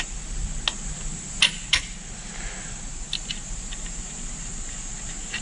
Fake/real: real